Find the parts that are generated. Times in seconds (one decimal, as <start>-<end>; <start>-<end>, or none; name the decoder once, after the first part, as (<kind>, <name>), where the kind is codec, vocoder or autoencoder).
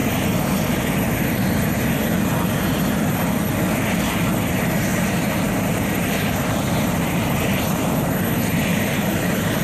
4.9-7.6 (vocoder, BigVGAN v2); 8.7-9.6